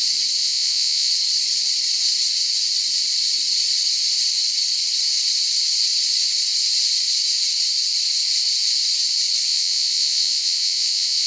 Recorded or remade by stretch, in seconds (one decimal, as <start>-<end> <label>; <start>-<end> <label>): 0.0-0.4 recorded; 0.4-1.1 remade; 1.1-9.5 recorded; 9.5-11.3 remade